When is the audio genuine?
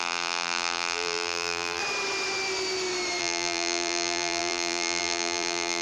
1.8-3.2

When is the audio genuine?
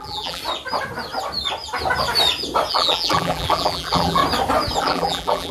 0.4-2.7; 4.2-4.8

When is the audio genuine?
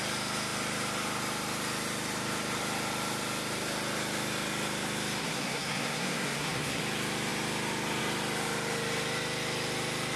0.0-5.2; 6.8-10.2